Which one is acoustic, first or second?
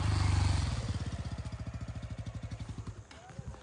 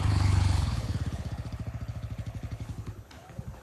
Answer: first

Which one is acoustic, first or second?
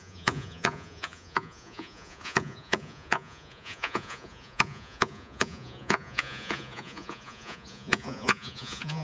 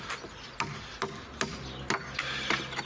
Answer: second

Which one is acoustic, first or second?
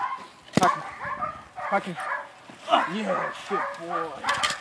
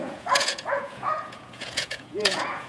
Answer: first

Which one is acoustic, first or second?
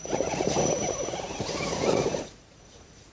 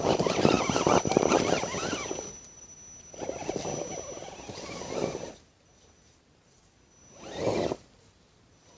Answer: second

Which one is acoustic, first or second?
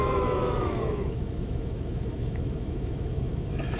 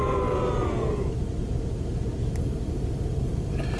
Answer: second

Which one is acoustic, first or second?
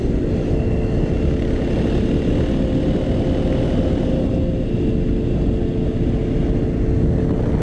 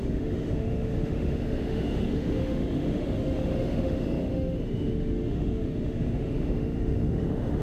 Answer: first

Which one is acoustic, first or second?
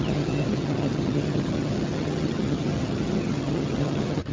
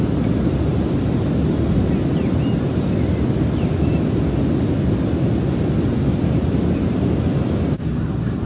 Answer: second